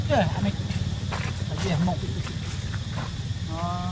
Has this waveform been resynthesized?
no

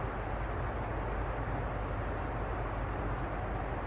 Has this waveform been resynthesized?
no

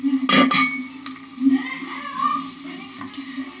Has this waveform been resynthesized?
no